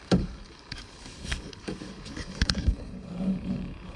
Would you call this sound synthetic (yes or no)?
yes